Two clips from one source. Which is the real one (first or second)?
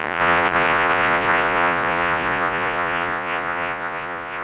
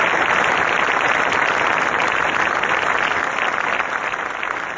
second